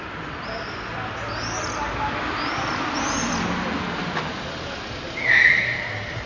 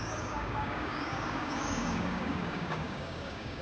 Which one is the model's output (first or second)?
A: second